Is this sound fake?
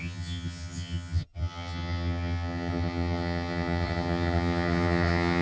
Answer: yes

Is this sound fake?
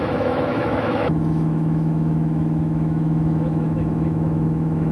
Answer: yes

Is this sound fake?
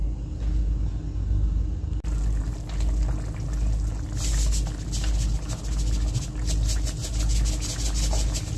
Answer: no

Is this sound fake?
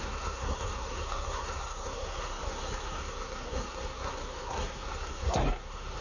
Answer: yes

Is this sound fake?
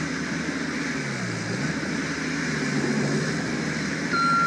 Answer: no